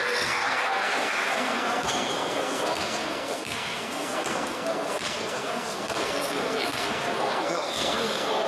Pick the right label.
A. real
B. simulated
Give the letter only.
B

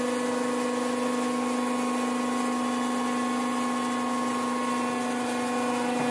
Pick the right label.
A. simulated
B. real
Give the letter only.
B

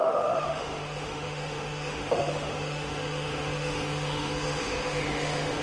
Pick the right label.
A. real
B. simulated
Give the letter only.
B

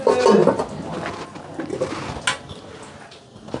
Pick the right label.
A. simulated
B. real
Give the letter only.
B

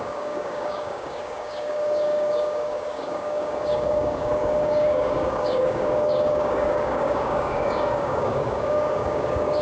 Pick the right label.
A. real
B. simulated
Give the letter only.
B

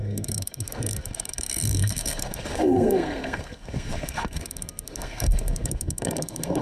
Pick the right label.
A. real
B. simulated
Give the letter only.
B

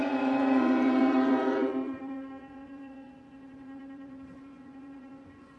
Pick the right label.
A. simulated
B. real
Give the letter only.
A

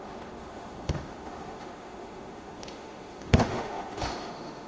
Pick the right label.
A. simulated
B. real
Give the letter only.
A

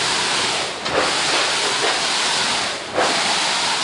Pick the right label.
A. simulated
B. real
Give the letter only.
B